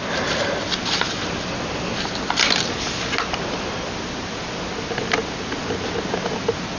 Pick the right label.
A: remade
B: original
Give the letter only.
B